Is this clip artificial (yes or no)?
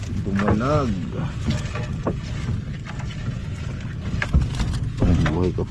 no